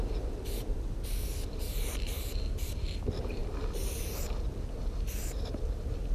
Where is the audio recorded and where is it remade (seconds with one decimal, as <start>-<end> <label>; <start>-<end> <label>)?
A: 0.0-6.1 remade